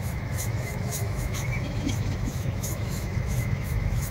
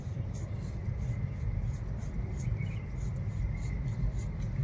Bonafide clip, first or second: second